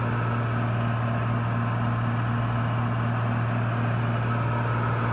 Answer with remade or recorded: recorded